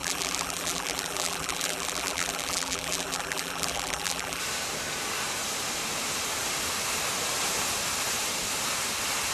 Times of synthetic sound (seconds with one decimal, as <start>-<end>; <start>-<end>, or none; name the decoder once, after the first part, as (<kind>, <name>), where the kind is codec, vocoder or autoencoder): 0.0-4.4 (vocoder, BigVGAN v2)